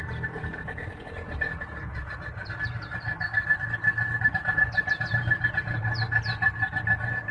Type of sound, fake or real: real